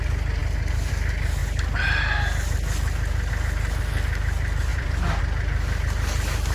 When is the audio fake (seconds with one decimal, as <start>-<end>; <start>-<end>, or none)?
4.7-5.2